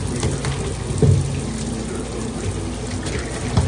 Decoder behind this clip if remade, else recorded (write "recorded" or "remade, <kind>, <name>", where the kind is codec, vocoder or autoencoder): recorded